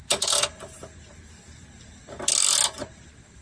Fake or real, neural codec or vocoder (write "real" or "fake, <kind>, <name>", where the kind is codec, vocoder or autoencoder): real